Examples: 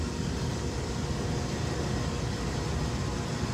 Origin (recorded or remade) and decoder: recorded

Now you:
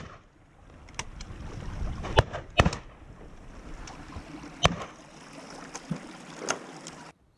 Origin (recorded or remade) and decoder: recorded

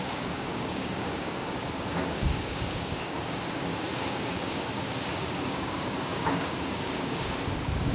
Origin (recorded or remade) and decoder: remade, codec, DAC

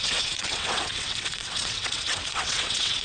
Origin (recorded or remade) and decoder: remade, vocoder, WaveNeXt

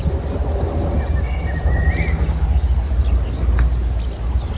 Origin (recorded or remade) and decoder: recorded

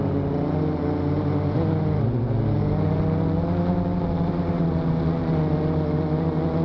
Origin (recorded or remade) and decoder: recorded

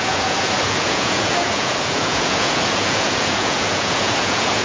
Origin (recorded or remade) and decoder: remade, vocoder, Vocos